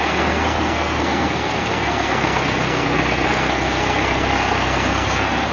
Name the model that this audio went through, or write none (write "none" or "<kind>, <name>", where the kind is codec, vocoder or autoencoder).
codec, SNAC